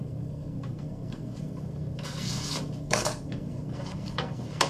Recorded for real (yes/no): no